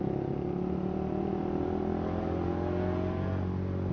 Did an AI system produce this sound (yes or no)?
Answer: no